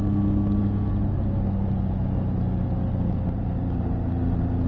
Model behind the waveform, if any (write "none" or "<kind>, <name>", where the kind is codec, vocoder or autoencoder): none